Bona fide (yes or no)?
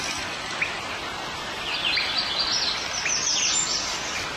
yes